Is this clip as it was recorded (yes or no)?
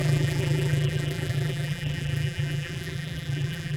no